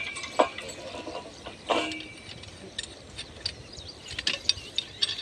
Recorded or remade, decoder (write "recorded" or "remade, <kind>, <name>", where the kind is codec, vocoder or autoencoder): recorded